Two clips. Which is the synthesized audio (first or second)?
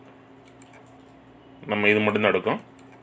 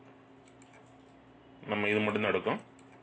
first